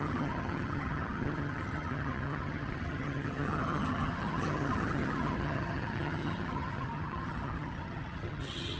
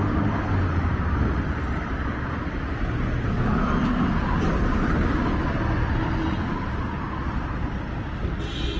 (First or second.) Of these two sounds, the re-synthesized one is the first